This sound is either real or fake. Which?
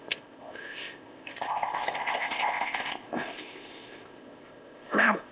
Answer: fake